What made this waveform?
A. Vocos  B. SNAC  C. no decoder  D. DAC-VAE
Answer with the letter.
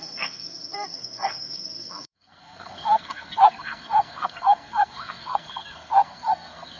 B